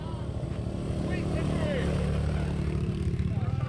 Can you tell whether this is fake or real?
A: fake